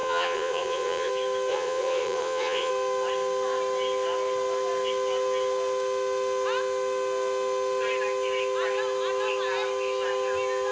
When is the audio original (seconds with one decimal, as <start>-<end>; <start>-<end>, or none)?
1.1-1.5; 2.7-10.7